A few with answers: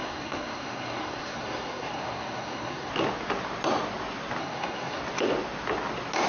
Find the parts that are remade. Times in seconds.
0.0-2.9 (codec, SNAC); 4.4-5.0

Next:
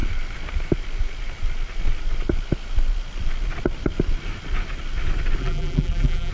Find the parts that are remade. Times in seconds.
5.4-6.3 (vocoder, BigVGAN v2)

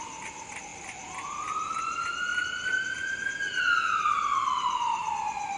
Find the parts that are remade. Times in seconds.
none

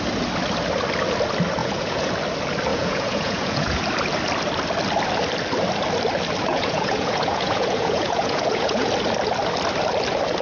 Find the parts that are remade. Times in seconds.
1.6-2.1 (vocoder, Vocos); 2.7-3.8; 6.5-8.9

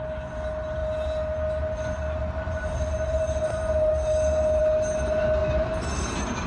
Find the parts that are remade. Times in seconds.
none

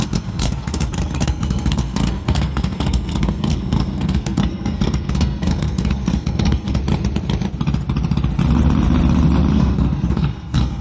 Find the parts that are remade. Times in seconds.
0.0-6.8 (codec, SNAC); 9.5-10.8